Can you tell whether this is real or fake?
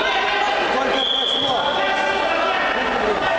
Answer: real